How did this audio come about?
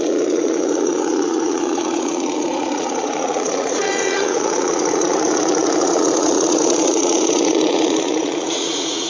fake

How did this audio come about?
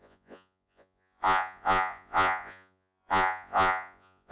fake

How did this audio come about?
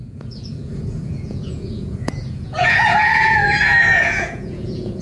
fake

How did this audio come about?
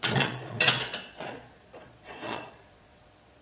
fake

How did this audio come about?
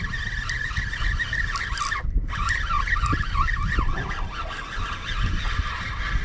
real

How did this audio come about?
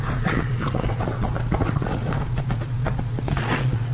fake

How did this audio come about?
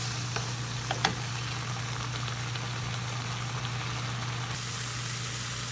real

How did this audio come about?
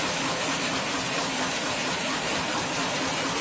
real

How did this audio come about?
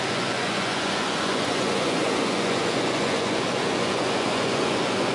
fake